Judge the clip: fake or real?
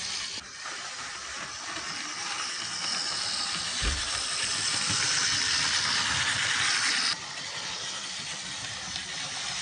real